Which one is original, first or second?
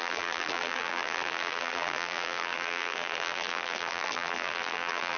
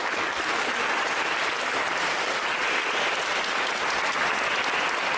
second